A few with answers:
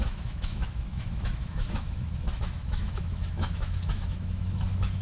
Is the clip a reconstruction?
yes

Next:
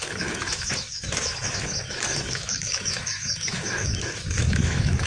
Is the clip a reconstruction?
yes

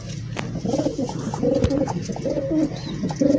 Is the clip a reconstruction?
no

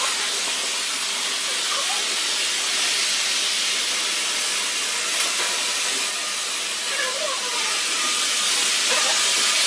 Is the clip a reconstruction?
no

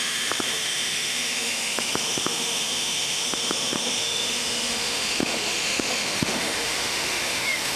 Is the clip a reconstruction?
yes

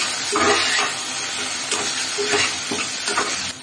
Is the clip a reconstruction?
no